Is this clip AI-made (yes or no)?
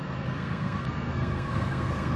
yes